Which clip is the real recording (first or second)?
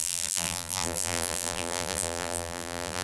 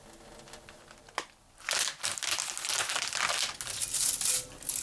second